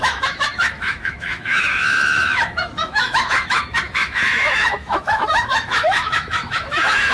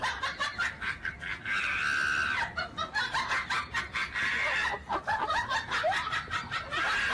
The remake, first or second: first